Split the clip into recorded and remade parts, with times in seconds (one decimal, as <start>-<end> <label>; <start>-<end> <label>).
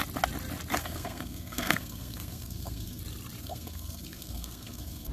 0.0-0.8 recorded; 0.8-3.0 remade; 3.0-3.4 recorded; 3.4-5.1 remade